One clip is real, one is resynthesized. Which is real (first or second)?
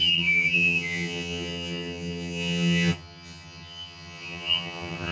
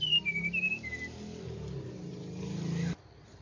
second